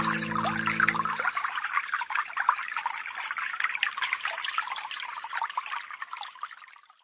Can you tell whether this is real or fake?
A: real